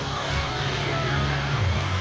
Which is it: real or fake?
fake